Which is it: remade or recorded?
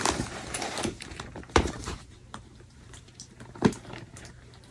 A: remade